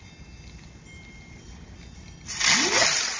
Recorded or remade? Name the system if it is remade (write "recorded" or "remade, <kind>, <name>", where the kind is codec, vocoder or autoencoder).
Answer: recorded